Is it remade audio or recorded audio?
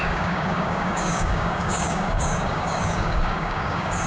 remade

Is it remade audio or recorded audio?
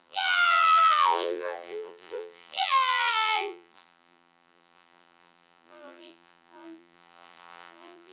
remade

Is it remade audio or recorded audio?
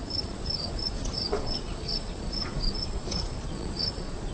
remade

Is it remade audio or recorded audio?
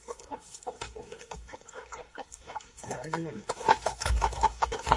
remade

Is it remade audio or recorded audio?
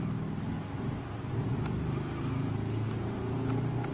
recorded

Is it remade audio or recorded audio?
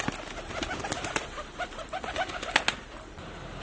recorded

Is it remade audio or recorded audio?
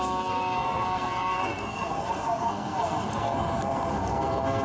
remade